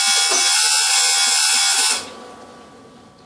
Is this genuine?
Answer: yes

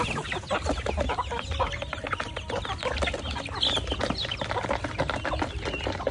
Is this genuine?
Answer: yes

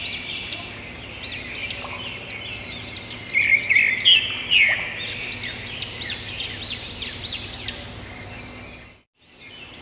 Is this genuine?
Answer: yes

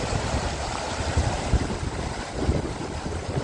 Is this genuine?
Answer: yes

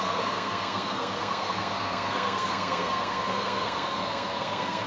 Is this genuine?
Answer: no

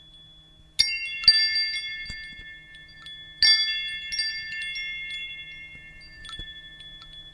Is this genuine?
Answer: yes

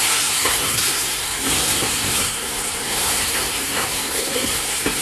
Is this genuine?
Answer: no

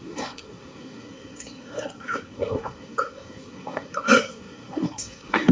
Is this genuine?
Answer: no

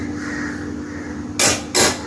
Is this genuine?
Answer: yes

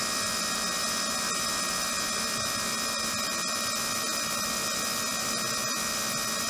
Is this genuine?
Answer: yes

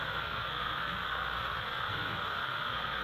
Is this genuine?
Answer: no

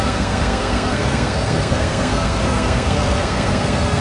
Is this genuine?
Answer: no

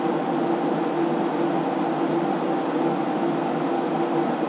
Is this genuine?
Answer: yes